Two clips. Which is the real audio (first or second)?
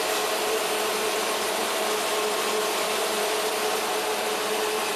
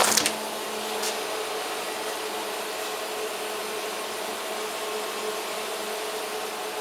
second